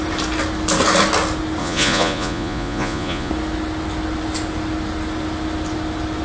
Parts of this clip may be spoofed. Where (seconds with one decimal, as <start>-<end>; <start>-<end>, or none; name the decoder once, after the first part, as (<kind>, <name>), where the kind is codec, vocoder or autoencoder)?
1.6-3.3 (vocoder, Vocos)

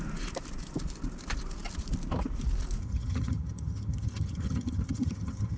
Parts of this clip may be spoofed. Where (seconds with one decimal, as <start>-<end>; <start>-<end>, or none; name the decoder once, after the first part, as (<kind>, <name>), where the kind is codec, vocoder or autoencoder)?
2.8-5.6 (vocoder, HiFi-GAN)

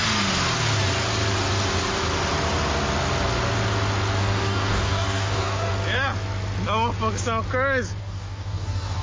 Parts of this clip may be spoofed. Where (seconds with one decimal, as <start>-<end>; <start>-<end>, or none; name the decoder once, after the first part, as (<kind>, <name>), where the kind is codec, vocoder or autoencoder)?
4.2-5.7 (codec, DAC); 8.0-9.0

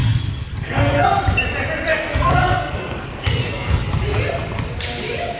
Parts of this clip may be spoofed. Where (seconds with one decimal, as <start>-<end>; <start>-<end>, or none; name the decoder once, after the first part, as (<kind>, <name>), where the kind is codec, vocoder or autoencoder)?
0.0-1.2 (codec, SNAC); 1.9-3.9